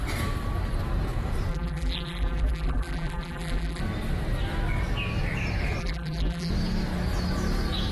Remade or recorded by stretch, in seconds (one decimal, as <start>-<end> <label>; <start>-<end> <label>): 0.0-1.5 recorded; 1.5-3.8 remade; 3.8-5.8 recorded; 5.8-6.5 remade; 6.5-7.9 recorded